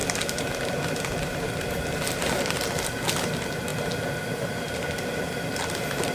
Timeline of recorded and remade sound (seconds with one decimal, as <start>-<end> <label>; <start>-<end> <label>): 0.0-6.1 recorded